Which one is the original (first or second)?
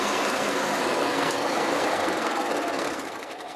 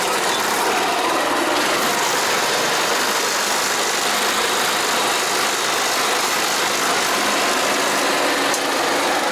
second